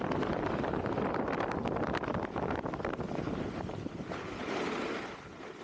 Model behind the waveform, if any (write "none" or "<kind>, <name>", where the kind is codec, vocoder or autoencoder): none